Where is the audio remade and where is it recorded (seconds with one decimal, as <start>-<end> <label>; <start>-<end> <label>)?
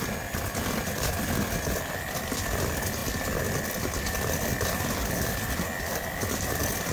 0.0-6.9 recorded